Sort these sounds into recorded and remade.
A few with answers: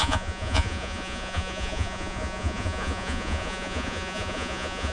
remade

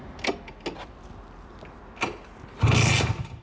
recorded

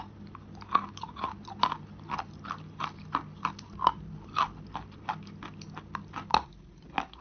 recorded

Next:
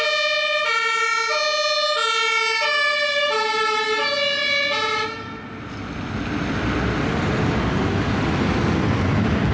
recorded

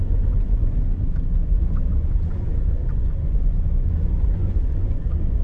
remade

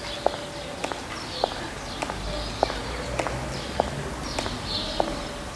recorded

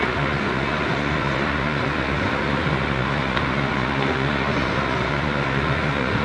remade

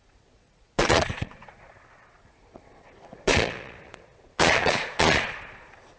remade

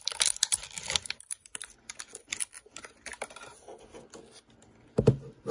recorded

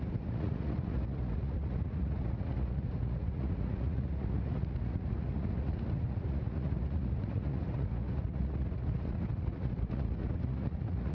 remade